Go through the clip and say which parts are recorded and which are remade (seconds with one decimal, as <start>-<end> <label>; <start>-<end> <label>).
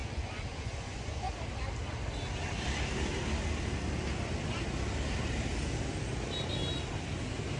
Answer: 0.0-1.3 remade; 1.3-7.6 recorded